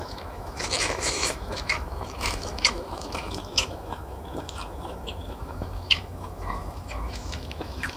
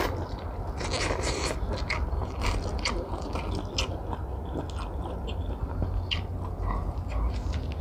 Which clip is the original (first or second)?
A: second